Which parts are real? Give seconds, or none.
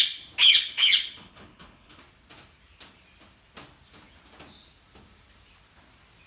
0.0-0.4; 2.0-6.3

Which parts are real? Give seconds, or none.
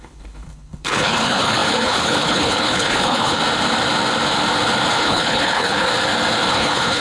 3.4-4.9; 5.9-6.5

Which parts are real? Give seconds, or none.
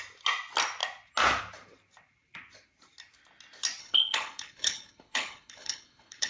0.0-3.8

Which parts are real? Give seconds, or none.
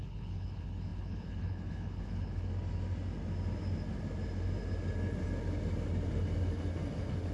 2.5-7.3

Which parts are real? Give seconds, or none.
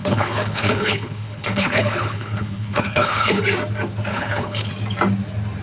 3.4-4.1; 4.7-5.6